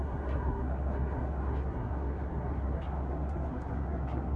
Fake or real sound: fake